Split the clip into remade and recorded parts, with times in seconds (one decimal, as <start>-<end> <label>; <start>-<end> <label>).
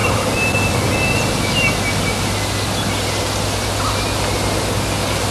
0.0-5.3 recorded